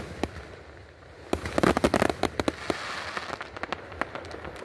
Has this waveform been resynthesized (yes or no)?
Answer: no